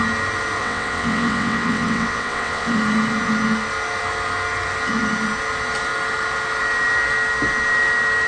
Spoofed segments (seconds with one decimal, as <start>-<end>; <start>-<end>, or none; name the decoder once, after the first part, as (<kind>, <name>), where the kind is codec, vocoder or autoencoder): 0.6-2.8 (vocoder, WaveNeXt)